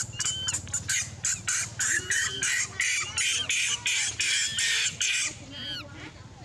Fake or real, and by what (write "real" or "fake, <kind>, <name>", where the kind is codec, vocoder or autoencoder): real